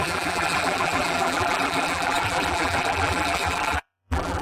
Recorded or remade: remade